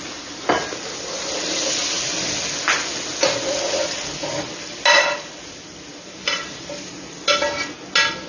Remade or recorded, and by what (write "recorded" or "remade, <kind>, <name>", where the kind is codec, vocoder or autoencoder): recorded